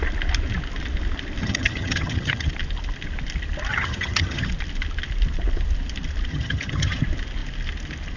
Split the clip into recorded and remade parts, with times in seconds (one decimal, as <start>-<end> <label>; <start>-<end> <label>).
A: 0.0-1.4 recorded; 1.4-2.5 remade; 2.5-3.7 recorded; 3.7-4.5 remade; 4.5-6.3 recorded; 6.3-7.0 remade; 7.0-8.2 recorded